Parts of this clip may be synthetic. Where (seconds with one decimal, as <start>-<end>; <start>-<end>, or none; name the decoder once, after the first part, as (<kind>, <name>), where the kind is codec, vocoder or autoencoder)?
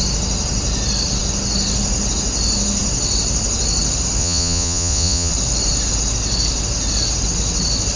4.2-5.3 (vocoder, Vocos)